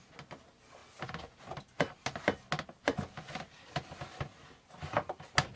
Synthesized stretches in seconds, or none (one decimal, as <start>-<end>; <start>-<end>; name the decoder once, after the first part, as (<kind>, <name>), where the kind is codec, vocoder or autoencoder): none